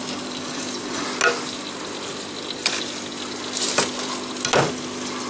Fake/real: real